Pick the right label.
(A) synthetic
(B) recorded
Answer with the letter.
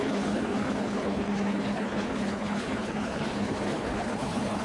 A